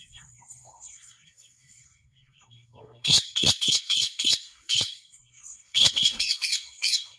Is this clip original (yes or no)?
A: no